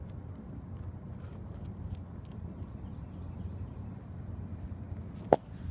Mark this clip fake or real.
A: real